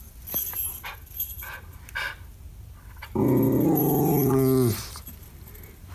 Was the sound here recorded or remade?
recorded